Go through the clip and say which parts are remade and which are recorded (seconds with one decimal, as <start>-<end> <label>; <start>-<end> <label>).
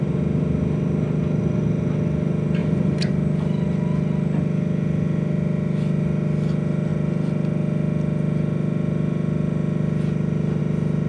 0.0-2.6 recorded; 2.6-3.1 remade; 3.1-11.1 recorded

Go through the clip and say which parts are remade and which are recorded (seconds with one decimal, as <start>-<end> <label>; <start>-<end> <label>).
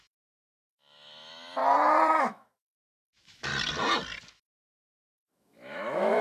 0.0-1.6 remade; 1.6-2.2 recorded; 2.2-3.5 remade; 3.5-4.3 recorded; 4.3-6.2 remade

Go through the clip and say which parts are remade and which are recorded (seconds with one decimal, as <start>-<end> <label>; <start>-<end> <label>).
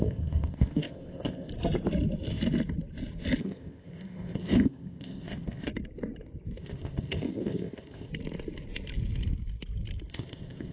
0.0-1.5 remade; 1.5-3.4 recorded; 3.4-5.7 remade; 5.7-6.6 recorded; 6.6-8.1 remade; 8.1-10.1 recorded; 10.1-10.7 remade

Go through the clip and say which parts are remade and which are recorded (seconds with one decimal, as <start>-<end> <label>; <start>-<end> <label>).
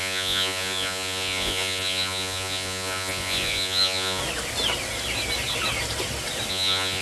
0.0-4.2 remade; 4.2-6.5 recorded; 6.5-7.0 remade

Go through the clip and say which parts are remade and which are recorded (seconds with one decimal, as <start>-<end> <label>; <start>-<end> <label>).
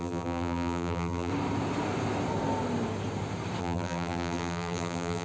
0.0-1.3 remade; 1.3-3.6 recorded; 3.6-5.2 remade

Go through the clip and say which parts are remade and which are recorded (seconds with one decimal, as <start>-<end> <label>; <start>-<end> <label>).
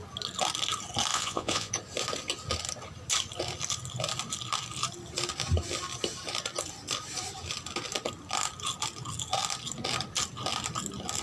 0.0-1.1 recorded; 1.1-1.7 remade; 1.7-11.2 recorded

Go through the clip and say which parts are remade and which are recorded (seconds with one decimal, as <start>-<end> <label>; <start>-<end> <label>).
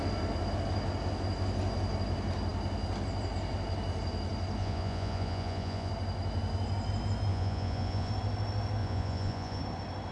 0.0-4.6 recorded; 4.6-5.9 remade; 5.9-7.3 recorded; 7.3-8.1 remade; 8.1-8.8 recorded; 8.8-9.6 remade; 9.6-10.1 recorded